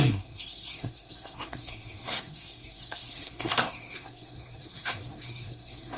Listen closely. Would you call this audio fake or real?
fake